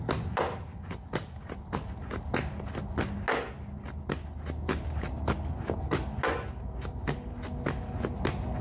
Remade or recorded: recorded